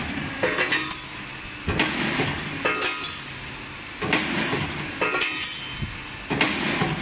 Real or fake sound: real